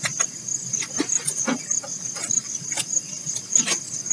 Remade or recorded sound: recorded